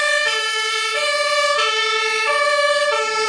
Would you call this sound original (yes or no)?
no